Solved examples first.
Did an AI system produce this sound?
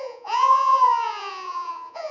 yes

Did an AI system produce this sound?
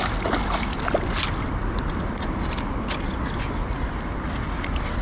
no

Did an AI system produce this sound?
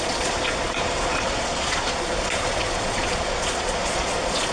yes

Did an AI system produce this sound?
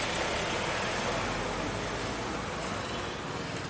no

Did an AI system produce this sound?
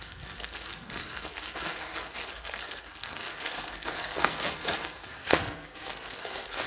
yes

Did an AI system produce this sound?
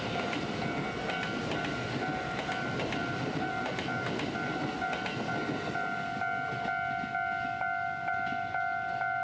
no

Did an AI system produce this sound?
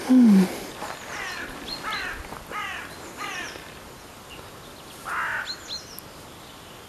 no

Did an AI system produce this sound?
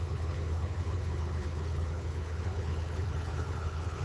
yes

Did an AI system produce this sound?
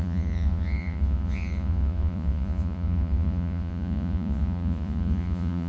yes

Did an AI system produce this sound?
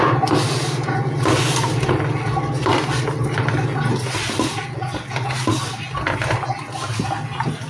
no